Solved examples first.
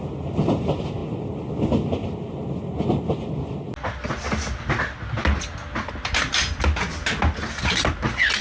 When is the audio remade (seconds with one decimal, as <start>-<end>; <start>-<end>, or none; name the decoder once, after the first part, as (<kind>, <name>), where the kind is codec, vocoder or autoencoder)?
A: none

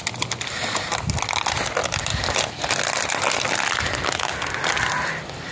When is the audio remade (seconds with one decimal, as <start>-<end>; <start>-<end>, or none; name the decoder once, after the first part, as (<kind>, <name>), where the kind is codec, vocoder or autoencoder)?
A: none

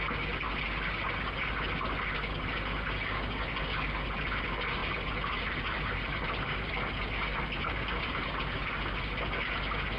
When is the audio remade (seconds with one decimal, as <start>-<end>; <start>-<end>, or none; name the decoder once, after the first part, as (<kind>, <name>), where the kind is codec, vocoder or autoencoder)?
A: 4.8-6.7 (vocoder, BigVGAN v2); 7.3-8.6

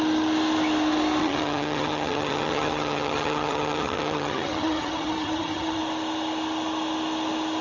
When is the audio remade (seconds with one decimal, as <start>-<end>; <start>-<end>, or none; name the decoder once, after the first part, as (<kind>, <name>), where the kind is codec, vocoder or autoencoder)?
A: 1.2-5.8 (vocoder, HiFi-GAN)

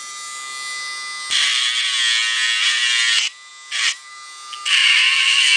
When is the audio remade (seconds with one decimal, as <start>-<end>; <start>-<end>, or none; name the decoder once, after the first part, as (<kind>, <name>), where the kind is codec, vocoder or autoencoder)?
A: 4.8-5.6 (vocoder, BigVGAN v2)